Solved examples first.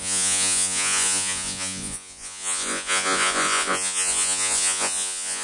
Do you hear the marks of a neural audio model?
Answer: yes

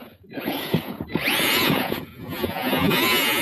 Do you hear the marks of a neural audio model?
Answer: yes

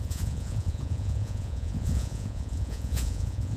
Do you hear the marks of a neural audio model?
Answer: yes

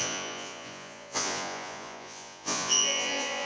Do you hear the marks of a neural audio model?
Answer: yes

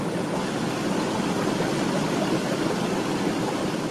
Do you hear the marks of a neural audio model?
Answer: no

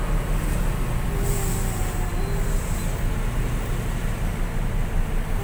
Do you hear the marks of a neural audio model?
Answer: no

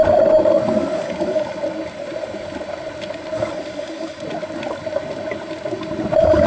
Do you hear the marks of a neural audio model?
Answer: no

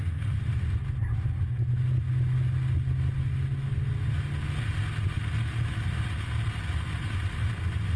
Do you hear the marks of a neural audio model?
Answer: no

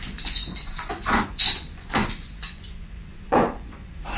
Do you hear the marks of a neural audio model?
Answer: yes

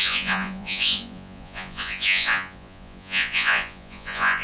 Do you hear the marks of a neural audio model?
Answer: yes